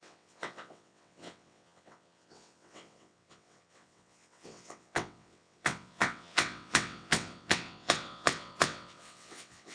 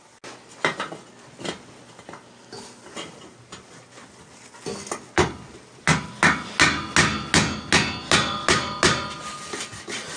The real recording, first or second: second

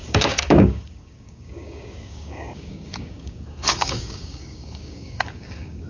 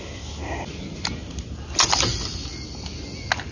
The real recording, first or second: second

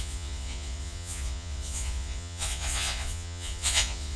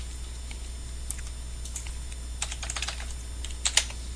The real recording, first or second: second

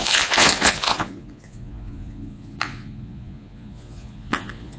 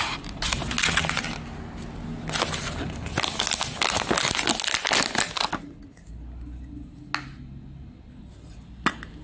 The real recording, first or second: second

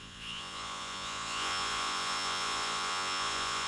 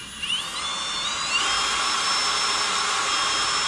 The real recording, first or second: second